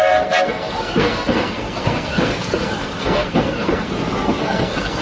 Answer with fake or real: fake